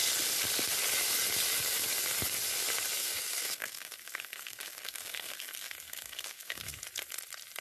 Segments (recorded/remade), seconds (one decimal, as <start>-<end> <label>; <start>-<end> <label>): 0.0-3.0 recorded; 3.0-6.8 remade; 6.8-7.6 recorded

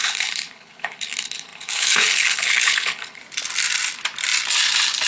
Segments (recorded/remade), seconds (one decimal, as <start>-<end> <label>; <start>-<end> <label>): 0.0-3.2 remade; 3.2-5.1 recorded

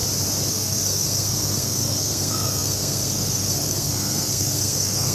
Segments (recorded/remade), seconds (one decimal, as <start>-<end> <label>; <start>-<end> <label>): 0.0-0.5 recorded; 0.5-5.1 remade